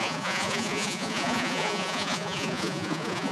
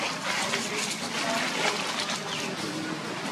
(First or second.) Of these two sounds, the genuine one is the second